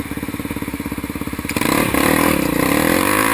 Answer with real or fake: real